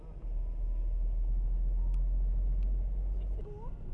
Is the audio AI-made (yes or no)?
no